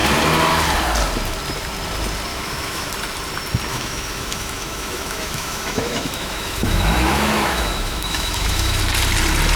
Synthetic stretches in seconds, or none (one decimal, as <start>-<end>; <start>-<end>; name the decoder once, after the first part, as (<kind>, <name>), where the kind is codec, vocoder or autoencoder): 2.3-2.9 (autoencoder, DAC-VAE); 3.7-8.8